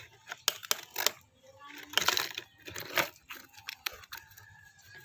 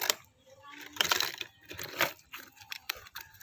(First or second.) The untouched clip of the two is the first